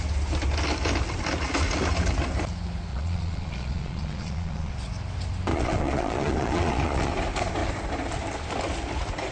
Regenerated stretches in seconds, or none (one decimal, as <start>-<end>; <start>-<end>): 2.9-4.7; 5.5-7.1